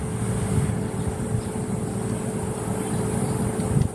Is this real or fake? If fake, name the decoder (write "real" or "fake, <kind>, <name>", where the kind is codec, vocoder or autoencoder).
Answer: real